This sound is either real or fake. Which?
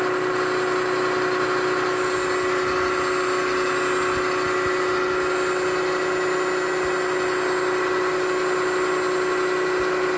real